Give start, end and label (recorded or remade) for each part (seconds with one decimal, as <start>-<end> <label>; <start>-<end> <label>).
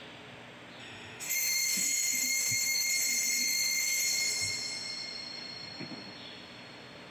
0.0-0.8 recorded; 0.8-2.9 remade; 2.9-3.4 recorded; 3.4-4.0 remade; 4.0-7.1 recorded